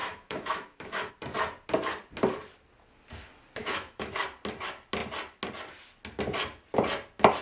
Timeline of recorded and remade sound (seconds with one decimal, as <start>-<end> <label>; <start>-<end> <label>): 0.0-1.1 remade; 1.1-3.6 recorded; 3.6-4.1 remade; 4.1-7.4 recorded